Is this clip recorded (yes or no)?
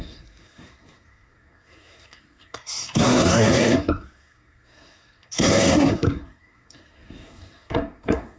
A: no